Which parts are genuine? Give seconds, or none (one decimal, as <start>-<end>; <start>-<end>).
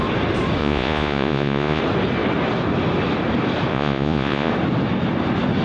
0.0-0.6; 1.8-3.7; 4.5-5.6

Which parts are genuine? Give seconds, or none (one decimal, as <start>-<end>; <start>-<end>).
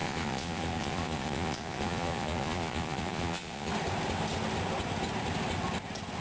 3.7-6.2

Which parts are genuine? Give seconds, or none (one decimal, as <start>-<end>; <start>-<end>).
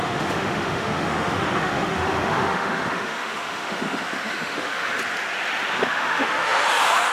5.0-5.8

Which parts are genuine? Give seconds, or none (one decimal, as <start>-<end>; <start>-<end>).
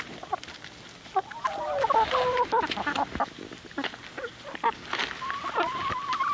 0.0-6.3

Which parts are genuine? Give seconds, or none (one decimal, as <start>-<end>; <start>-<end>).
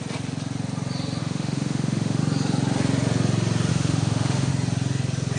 0.0-1.2; 2.2-3.7; 4.5-5.4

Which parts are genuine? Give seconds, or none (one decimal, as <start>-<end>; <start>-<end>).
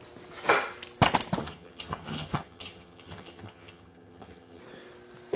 0.0-1.4; 4.6-5.4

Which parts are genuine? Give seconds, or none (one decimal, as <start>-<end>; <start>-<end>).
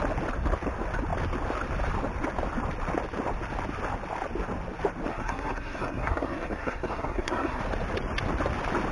0.0-5.1; 7.6-8.9